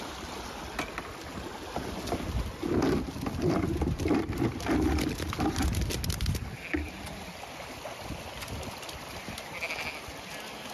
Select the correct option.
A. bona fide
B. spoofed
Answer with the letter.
A